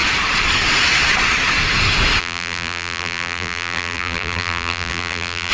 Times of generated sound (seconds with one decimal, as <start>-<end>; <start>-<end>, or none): 2.2-5.5